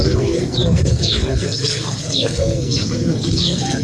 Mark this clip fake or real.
fake